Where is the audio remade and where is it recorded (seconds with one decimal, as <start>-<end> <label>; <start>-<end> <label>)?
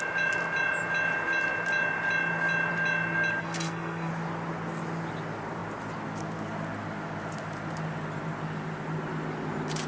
0.0-3.4 recorded; 3.4-4.1 remade; 4.1-9.9 recorded